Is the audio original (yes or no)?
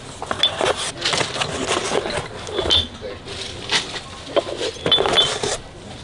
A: yes